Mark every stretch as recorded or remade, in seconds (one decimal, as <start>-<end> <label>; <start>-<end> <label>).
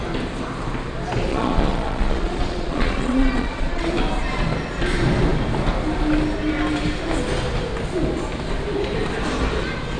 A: 0.0-1.3 recorded; 1.3-3.9 remade; 3.9-10.0 recorded